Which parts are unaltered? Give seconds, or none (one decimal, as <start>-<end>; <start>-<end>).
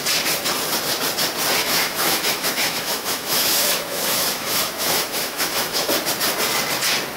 0.0-1.6; 5.9-7.2